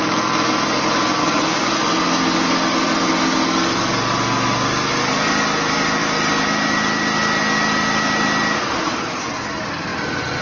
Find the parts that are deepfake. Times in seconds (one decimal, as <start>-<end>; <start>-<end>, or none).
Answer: 1.2-1.7